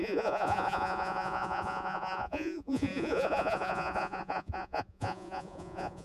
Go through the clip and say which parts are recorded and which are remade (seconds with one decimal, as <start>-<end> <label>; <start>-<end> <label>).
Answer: 0.0-6.0 remade